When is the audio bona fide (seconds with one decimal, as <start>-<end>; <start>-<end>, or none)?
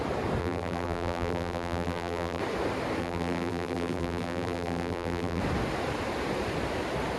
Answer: 0.0-0.4; 2.4-3.0; 5.4-7.2